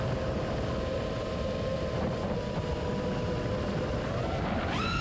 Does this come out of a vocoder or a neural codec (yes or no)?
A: no